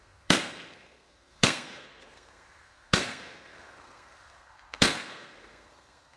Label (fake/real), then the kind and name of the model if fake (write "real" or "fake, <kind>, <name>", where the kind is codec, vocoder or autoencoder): fake, codec, SNAC